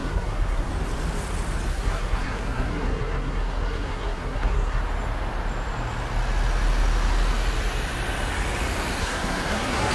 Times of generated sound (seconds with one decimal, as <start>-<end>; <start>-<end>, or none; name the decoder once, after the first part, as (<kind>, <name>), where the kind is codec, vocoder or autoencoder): 0.0-0.7 (codec, SNAC); 1.7-4.8; 9.0-9.9